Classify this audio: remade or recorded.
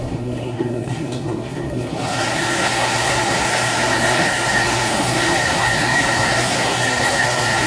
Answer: remade